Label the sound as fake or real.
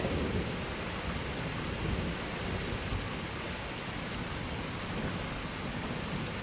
real